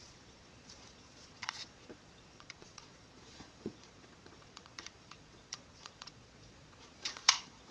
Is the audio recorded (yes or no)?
no